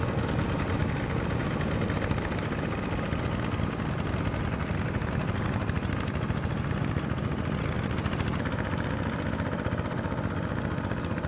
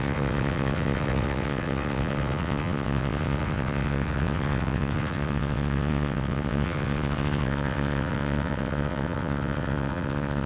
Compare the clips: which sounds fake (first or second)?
second